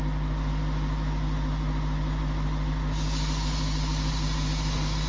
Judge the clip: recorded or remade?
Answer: recorded